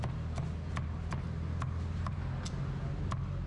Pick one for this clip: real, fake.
real